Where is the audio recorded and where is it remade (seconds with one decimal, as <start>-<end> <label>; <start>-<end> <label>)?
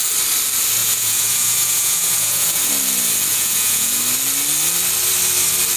0.0-0.8 recorded; 0.8-2.7 remade; 2.7-3.3 recorded; 3.3-4.0 remade; 4.0-5.8 recorded